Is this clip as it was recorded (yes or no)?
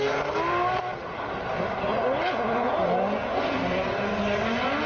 yes